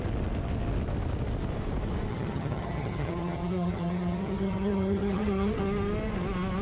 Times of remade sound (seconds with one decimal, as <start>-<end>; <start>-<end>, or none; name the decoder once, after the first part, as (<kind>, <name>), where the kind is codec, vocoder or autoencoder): 2.1-5.6 (vocoder, HiFi-GAN)